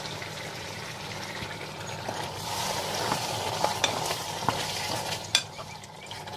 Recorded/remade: remade